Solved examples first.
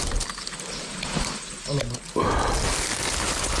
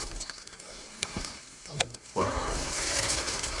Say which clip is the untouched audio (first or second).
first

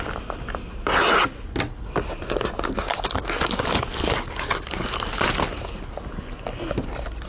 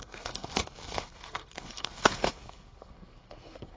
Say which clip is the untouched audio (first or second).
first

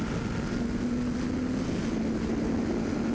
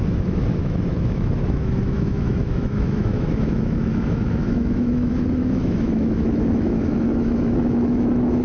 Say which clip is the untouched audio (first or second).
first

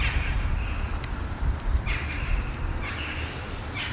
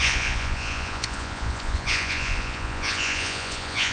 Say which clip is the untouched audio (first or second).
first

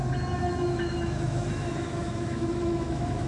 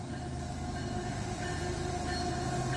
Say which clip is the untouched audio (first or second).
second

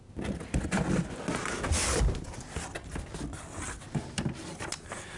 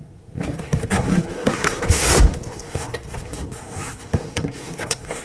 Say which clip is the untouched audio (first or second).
first